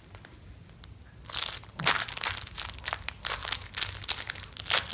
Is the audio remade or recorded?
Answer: recorded